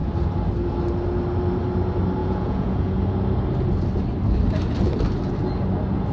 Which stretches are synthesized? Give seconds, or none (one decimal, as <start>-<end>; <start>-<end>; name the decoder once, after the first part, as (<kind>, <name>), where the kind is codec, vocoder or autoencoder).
2.2-3.0 (vocoder, Vocos)